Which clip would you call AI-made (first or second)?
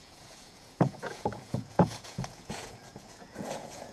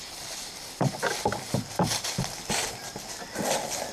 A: first